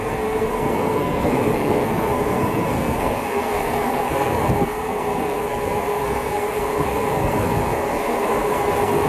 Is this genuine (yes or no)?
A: no